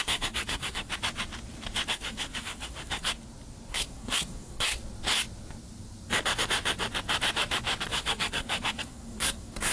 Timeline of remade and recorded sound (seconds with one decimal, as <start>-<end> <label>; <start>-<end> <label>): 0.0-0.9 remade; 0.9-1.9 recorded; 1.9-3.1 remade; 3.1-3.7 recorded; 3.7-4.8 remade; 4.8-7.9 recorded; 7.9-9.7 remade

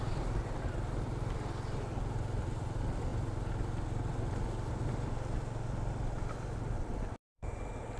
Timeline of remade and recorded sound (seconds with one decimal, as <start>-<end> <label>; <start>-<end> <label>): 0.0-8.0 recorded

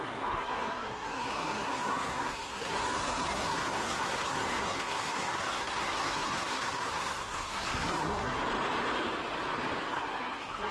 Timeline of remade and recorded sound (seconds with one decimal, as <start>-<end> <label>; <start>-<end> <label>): 0.0-8.4 remade; 8.4-9.9 recorded; 9.9-10.7 remade

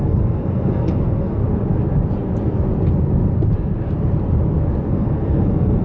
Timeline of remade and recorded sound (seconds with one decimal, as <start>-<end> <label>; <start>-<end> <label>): 0.0-1.4 remade; 1.4-4.9 recorded; 4.9-5.8 remade